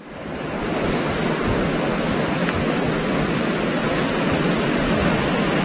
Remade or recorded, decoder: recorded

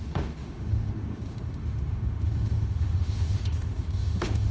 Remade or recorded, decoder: remade, autoencoder, DAC-VAE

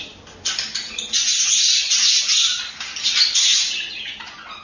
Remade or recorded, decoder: recorded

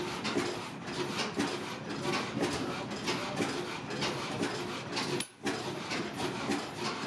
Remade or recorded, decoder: recorded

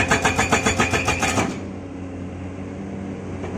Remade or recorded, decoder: recorded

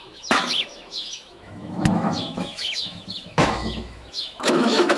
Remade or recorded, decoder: remade, autoencoder, DAC-VAE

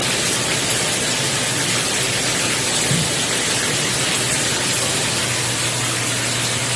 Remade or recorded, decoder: recorded